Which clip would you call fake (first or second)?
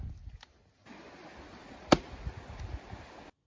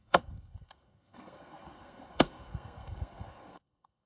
second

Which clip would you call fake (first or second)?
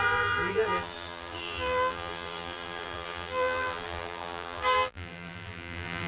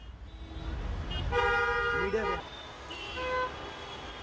first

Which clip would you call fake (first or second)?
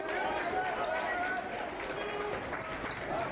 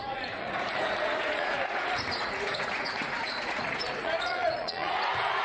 second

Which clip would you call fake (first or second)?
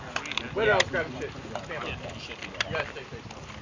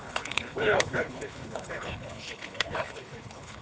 second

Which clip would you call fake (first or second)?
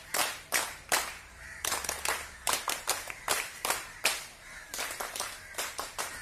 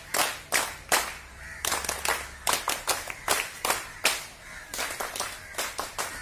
first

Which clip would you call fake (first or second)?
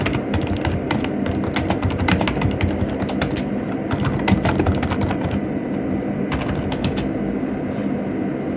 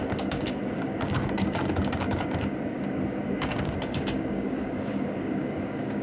second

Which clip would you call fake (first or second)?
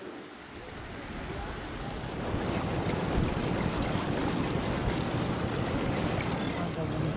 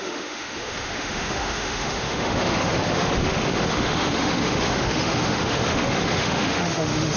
second